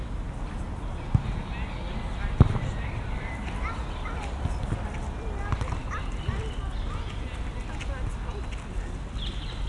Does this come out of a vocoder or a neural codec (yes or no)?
no